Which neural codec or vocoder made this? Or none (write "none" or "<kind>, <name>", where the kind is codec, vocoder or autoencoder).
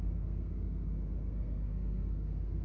codec, SNAC